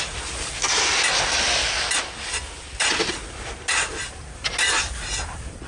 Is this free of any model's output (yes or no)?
yes